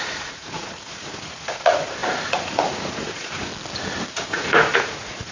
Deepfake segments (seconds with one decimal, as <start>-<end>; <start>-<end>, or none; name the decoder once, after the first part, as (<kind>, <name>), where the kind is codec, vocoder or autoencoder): 0.0-3.5 (vocoder, Vocos); 4.1-5.3